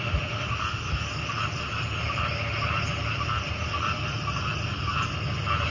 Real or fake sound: real